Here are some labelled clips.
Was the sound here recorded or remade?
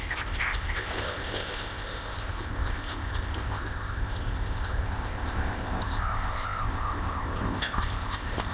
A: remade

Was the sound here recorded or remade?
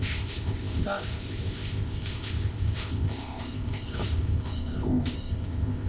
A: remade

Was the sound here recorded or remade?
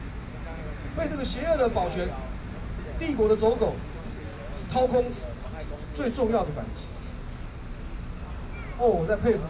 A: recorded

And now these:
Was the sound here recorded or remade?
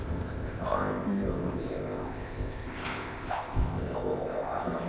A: remade